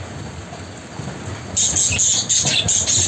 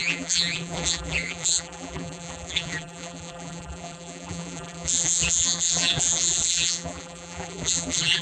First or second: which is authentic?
first